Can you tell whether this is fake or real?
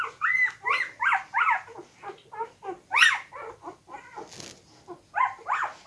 real